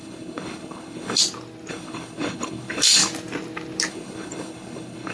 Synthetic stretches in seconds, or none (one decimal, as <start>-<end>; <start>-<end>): 0.0-1.2; 1.7-3.0; 3.9-5.1